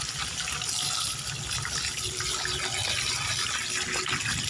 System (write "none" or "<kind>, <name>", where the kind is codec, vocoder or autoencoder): none